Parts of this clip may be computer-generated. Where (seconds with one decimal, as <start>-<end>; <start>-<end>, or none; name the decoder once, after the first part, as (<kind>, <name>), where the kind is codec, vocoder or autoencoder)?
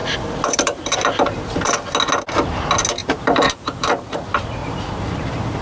0.0-1.7 (vocoder, BigVGAN v2); 3.0-3.9; 4.6-5.6